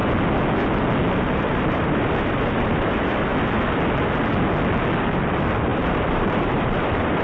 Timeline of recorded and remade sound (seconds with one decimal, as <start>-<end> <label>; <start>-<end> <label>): 0.0-1.1 recorded; 1.1-3.3 remade; 3.3-5.0 recorded; 5.0-7.2 remade